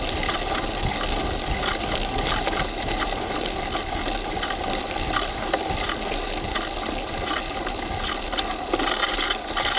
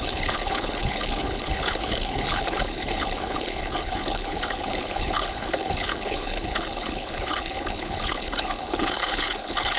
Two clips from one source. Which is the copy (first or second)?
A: second